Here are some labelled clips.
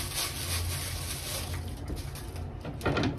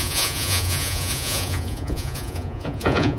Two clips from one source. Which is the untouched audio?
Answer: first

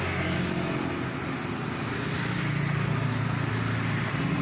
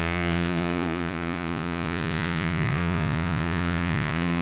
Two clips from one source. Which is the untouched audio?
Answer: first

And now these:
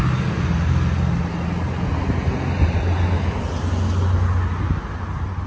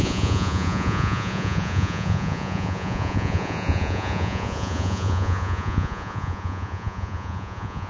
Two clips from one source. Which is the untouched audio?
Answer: first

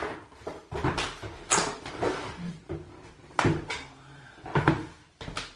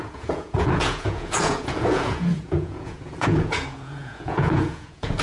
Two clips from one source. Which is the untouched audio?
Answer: first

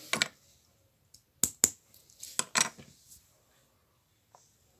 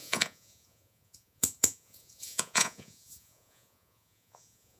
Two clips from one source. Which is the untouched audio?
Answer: first